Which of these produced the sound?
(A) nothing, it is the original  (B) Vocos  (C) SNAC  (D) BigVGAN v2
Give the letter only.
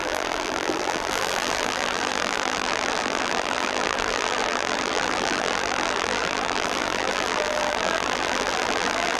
D